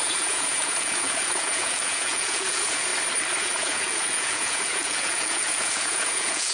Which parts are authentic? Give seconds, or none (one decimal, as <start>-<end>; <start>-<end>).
2.9-3.4

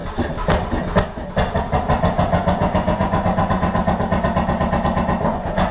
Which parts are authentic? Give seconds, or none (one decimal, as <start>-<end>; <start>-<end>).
0.0-2.0; 3.8-5.3

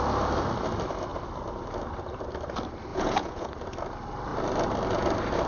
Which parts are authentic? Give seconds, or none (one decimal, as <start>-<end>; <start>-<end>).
0.0-2.9; 3.5-5.5

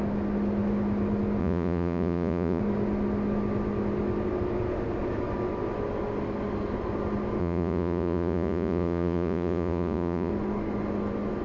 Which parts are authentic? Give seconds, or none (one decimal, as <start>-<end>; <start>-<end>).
0.0-1.4; 2.6-7.4; 10.3-11.4

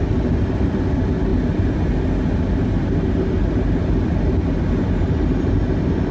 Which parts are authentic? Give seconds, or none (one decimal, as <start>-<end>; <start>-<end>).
0.0-6.1